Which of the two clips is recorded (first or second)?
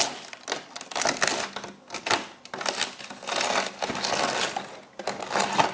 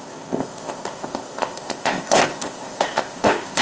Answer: first